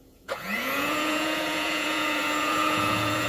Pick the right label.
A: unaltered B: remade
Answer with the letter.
B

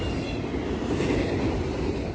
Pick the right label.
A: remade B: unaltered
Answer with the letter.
B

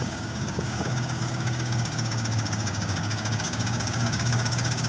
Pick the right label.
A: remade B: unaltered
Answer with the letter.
A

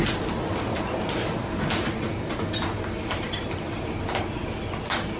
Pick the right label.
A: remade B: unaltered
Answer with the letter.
B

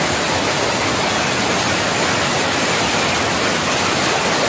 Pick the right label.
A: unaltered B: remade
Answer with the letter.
A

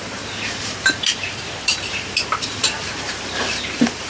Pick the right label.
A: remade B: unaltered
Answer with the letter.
A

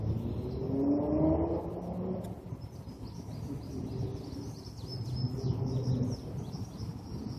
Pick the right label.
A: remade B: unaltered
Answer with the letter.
B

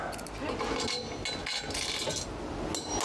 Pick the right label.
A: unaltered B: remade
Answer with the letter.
A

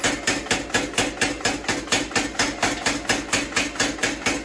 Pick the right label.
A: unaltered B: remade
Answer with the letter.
A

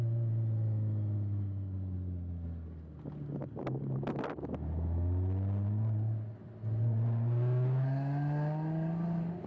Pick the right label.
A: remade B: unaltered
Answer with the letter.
B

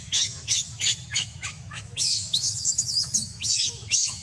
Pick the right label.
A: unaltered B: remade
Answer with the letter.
B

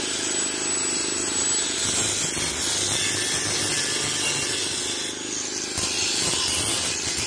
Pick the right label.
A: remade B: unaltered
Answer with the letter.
B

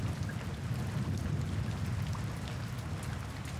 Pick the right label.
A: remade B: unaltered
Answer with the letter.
B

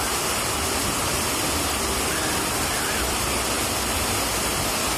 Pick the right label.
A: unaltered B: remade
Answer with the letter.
A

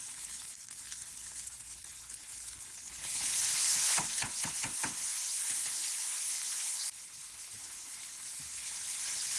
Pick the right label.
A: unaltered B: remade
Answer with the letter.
B